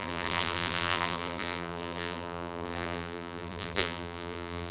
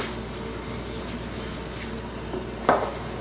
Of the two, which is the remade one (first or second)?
first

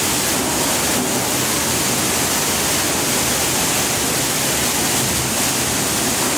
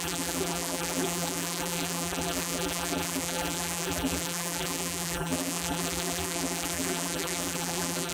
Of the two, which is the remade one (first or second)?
second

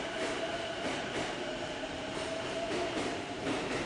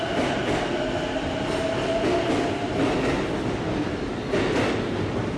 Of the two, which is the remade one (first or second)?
first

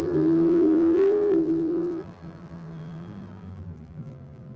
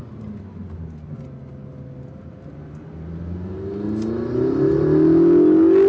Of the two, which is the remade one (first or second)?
first